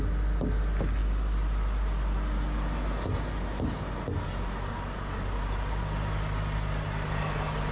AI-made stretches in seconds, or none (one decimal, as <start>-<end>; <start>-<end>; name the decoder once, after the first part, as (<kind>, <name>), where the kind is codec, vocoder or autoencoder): none